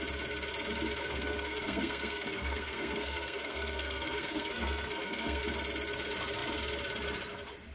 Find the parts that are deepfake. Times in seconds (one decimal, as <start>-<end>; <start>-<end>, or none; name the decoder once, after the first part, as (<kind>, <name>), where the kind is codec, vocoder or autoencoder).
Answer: 1.0-5.4 (codec, SNAC)